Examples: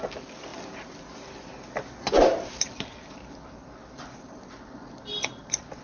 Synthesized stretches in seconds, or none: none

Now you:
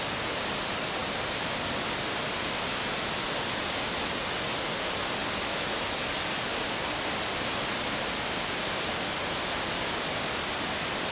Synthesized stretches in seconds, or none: none

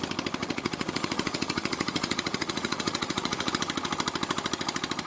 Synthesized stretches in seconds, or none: 0.4-3.5 (vocoder, Vocos)

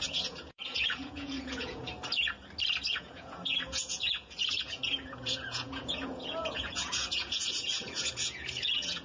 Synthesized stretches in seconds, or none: 0.0-1.8 (vocoder, Vocos); 2.9-9.0